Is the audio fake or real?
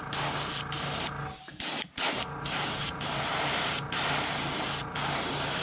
real